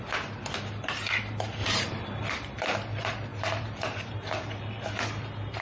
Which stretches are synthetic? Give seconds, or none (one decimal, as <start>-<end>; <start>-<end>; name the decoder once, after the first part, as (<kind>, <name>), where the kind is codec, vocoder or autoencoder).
1.6-2.3 (vocoder, BigVGAN v2); 3.3-4.4